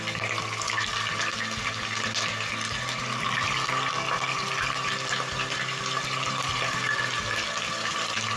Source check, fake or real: real